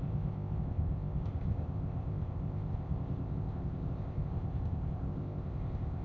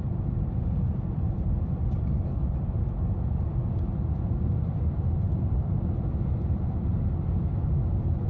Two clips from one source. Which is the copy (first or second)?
first